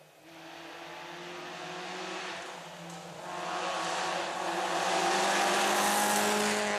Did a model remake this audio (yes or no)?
no